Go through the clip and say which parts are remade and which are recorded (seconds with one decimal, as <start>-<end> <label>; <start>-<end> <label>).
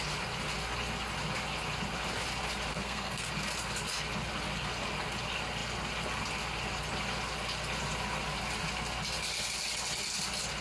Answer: 0.0-2.7 recorded; 2.7-3.3 remade; 3.3-10.6 recorded